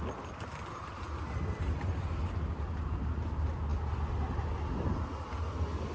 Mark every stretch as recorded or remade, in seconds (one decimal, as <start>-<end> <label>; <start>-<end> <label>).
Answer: 0.0-5.9 recorded